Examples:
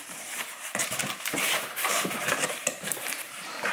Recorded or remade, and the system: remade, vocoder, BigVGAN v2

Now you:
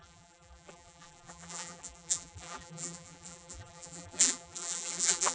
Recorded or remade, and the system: remade, vocoder, BigVGAN v2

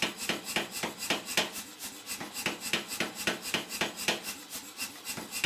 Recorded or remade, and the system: recorded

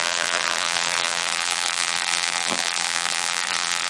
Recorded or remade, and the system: remade, vocoder, BigVGAN v2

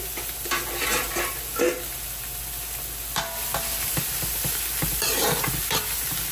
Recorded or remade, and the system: recorded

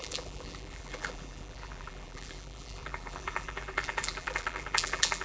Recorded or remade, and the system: remade, vocoder, BigVGAN v2